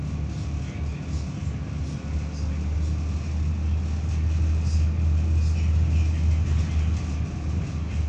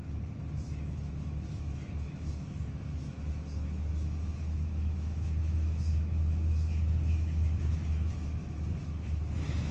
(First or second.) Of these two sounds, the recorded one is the first